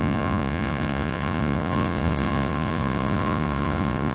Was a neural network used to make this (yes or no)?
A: yes